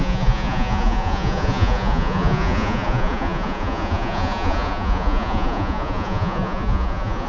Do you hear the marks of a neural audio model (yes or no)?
yes